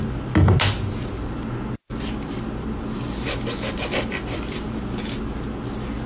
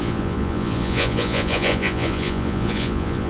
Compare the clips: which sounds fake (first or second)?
second